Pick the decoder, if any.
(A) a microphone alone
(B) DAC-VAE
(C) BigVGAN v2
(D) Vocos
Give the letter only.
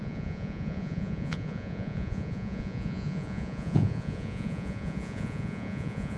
D